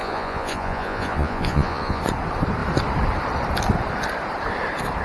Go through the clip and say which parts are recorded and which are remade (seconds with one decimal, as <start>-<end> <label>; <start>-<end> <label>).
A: 0.0-2.0 remade; 2.0-5.0 recorded